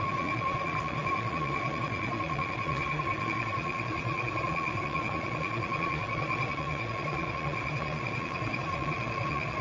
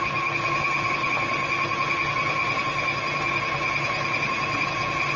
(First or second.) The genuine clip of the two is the second